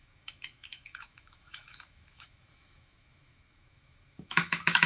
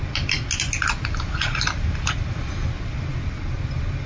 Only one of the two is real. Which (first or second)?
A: second